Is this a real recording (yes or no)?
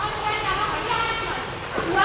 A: yes